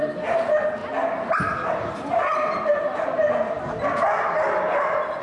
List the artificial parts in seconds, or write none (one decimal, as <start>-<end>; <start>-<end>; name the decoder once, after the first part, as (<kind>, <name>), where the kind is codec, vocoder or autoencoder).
none